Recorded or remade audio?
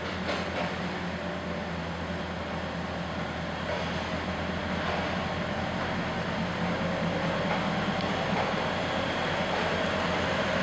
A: recorded